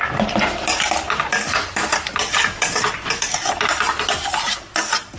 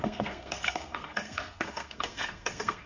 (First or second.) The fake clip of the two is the second